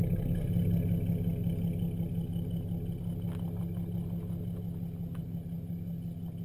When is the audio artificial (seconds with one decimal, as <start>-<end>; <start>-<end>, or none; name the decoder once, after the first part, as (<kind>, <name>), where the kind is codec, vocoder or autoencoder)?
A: none